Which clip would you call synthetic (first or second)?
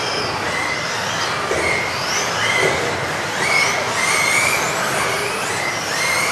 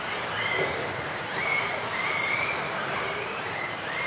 second